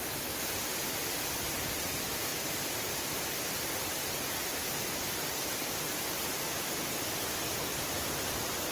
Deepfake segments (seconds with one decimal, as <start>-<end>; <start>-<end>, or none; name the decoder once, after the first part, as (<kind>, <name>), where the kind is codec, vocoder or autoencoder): 2.3-5.9 (vocoder, BigVGAN v2); 7.7-8.2